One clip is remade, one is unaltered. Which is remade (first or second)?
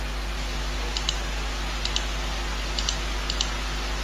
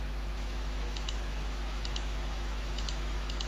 second